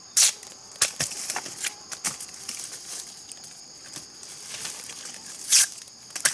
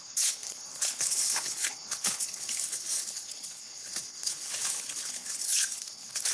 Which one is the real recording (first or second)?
first